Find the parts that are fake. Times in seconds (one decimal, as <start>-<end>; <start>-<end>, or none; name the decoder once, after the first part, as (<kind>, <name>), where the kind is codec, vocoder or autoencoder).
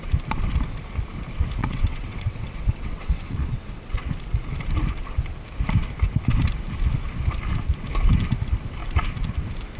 1.6-4.0 (vocoder, WaveNeXt)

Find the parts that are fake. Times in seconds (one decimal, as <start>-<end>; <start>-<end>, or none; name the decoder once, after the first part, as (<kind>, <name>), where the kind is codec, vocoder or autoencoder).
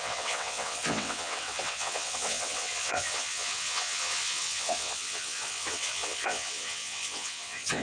0.0-7.8 (vocoder, WaveNeXt)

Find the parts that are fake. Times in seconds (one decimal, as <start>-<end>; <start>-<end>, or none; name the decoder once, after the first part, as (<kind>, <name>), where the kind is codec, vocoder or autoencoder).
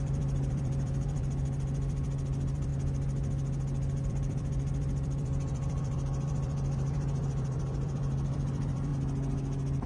0.0-2.7 (vocoder, BigVGAN v2); 4.1-8.9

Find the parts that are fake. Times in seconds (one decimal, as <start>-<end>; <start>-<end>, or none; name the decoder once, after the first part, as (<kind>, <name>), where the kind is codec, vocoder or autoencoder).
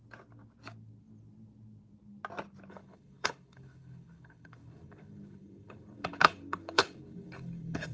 2.7-7.9 (codec, HILCodec)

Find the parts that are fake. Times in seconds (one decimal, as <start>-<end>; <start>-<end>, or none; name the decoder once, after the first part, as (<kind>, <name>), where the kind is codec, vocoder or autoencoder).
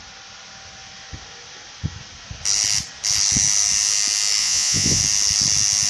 4.4-5.0 (vocoder, Vocos)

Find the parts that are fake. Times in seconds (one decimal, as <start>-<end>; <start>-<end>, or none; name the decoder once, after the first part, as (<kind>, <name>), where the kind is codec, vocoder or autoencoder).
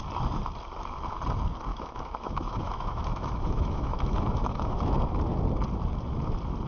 1.7-4.9 (autoencoder, DAC-VAE)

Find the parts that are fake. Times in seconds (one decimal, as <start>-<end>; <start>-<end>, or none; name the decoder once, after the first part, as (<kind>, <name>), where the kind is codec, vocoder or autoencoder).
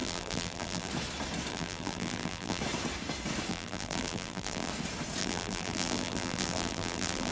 0.0-0.9 (vocoder, BigVGAN v2); 1.5-2.6; 3.5-4.7; 5.2-7.3